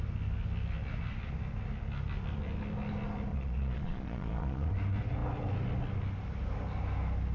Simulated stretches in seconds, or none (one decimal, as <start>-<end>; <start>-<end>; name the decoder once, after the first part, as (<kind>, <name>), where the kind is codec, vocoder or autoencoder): 3.3-4.7 (vocoder, Vocos)